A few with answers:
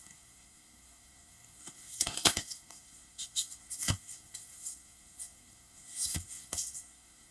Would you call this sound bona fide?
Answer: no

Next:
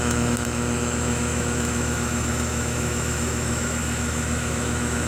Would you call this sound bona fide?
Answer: no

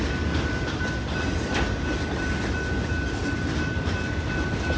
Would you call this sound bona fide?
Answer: yes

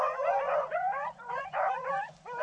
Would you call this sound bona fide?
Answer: no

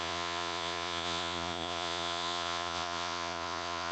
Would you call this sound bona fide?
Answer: no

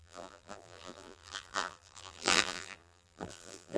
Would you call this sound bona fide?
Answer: no